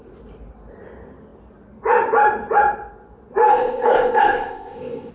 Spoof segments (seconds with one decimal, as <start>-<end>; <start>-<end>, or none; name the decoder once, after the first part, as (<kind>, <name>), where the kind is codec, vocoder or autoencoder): 3.5-5.1 (codec, ZipCodec)